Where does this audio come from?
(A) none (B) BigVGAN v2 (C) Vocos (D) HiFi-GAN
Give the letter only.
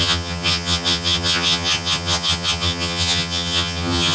D